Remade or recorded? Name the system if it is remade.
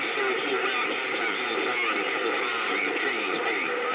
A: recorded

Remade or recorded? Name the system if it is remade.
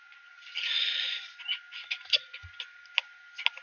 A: recorded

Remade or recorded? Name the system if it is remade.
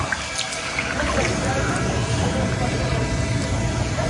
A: recorded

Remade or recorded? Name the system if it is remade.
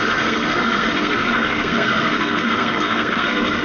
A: remade, codec, SNAC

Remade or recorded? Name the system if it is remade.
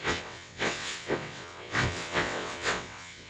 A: remade, vocoder, WaveNeXt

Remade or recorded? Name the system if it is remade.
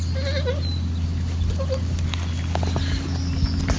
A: recorded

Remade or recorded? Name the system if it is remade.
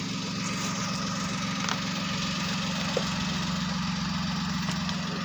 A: recorded